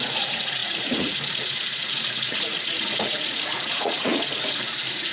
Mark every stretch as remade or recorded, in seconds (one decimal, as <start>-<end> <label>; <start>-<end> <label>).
0.0-5.1 remade